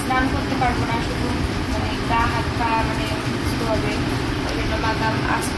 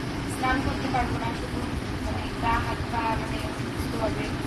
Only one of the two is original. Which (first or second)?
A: first